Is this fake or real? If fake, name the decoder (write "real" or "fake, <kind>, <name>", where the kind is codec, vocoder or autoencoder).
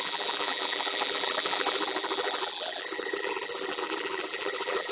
fake, vocoder, BigVGAN v2